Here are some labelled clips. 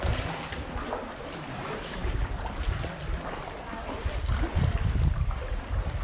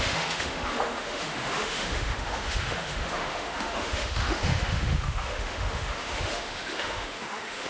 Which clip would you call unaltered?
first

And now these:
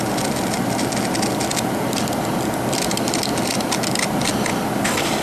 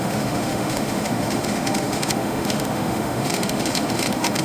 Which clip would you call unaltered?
first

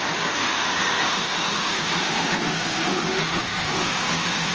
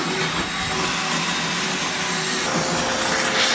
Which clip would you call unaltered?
second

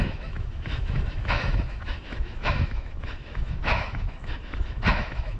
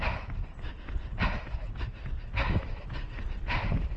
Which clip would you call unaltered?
second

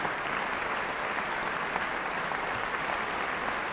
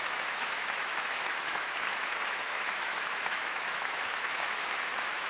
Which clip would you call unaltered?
first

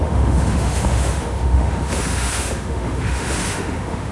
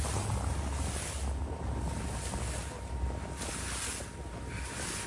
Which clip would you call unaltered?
second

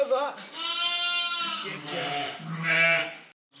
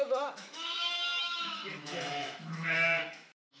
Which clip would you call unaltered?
first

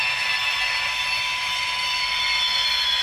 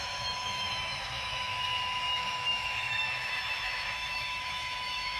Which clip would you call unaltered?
first